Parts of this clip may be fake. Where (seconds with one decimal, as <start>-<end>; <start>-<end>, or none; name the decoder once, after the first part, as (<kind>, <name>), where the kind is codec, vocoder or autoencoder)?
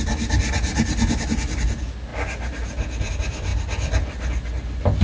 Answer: none